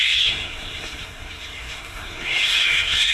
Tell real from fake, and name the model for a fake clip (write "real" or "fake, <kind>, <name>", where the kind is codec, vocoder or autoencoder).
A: fake, codec, SNAC